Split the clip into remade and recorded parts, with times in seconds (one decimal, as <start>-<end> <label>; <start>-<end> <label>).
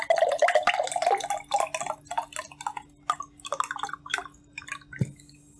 0.0-5.6 recorded